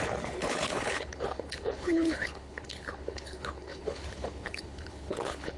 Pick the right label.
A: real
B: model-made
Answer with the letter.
B